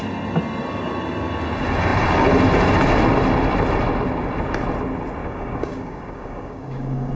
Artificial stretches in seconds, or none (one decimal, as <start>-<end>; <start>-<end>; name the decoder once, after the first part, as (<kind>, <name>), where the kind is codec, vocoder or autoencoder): 5.2-7.1 (codec, DAC)